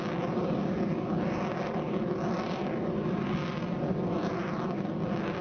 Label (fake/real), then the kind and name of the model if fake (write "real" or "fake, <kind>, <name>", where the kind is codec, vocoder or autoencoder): real